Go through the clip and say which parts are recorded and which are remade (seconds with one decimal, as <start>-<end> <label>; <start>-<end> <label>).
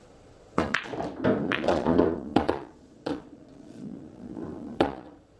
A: 0.0-0.9 remade; 0.9-1.4 recorded; 1.4-5.4 remade